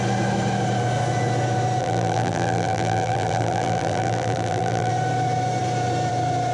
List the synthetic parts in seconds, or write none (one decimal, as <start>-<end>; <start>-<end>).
1.8-4.9